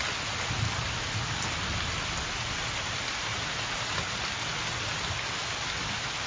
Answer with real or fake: real